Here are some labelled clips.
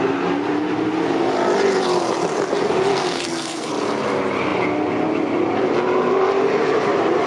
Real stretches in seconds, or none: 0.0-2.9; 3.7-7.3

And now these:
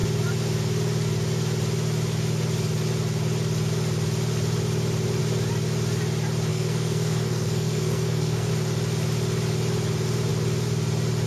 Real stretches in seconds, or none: 0.0-6.5; 8.5-11.3

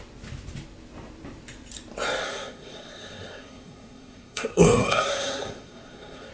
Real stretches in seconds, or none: 0.0-2.2

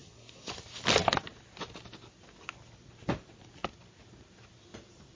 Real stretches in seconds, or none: 0.5-5.2

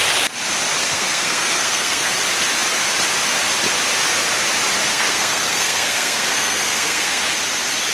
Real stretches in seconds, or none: 0.0-0.8; 2.1-4.9; 7.2-7.9